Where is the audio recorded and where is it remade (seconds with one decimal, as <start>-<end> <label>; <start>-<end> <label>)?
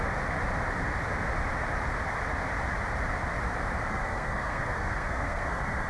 0.0-3.9 recorded; 3.9-5.9 remade